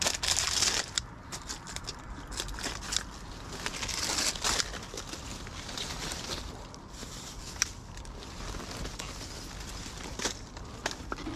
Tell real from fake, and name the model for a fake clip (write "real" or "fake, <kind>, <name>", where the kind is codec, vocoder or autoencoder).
real